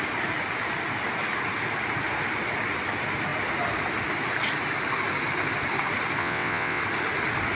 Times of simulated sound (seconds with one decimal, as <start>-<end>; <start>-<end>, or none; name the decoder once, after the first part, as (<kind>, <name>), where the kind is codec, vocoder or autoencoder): 6.2-6.8 (vocoder, WaveNeXt)

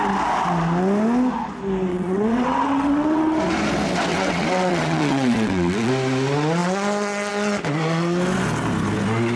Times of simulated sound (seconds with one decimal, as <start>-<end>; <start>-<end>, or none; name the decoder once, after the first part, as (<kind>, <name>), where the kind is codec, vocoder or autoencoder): 1.9-3.4 (vocoder, WaveNeXt); 4.1-5.9

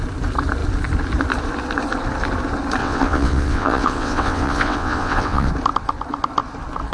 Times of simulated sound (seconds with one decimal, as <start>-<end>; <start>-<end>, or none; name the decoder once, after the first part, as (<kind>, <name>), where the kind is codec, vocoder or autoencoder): 2.8-5.5 (vocoder, WaveNeXt)

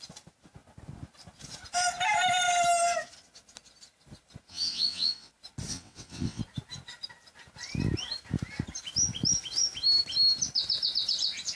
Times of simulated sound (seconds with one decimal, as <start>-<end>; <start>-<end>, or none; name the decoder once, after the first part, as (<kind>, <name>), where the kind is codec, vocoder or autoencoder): 4.5-5.3 (vocoder, WaveNeXt); 5.7-6.4

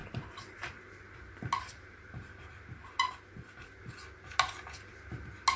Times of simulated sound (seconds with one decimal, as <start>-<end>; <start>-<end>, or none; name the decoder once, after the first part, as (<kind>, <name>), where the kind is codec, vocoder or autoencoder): none